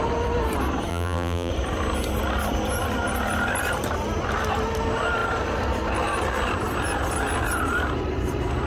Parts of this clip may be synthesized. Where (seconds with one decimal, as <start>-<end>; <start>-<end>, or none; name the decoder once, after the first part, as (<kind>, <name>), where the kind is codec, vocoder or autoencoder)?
0.9-1.5 (vocoder, BigVGAN v2)